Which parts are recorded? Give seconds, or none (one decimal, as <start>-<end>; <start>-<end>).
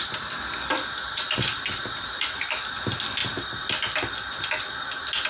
0.0-1.0; 2.7-5.3